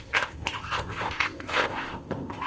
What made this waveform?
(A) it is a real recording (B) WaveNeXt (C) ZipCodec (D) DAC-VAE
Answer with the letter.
C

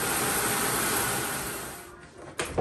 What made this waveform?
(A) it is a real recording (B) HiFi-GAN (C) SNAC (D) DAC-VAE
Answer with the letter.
A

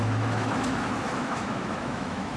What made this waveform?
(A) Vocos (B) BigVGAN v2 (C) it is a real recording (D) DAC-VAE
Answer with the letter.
D